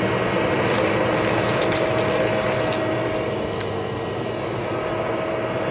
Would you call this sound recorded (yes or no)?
yes